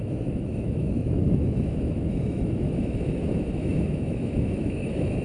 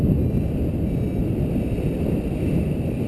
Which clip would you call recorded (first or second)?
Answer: second